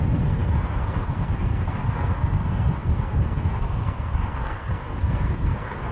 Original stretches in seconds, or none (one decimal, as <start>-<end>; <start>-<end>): none